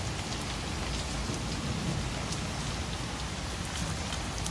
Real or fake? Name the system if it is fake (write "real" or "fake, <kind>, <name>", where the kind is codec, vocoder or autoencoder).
real